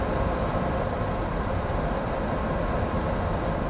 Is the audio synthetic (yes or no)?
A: no